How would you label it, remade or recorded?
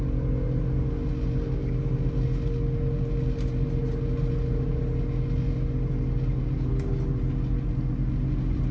recorded